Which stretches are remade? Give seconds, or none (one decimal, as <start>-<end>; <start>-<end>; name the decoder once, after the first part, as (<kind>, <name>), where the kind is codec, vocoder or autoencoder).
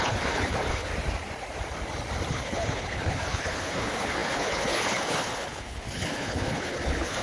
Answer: 0.0-0.9 (codec, HILCodec); 2.3-7.2